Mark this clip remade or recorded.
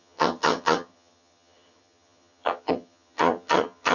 remade